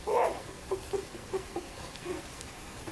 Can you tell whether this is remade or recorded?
remade